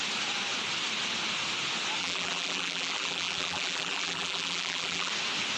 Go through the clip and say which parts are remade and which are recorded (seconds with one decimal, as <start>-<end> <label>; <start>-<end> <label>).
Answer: 0.0-2.0 recorded; 2.0-5.1 remade; 5.1-5.6 recorded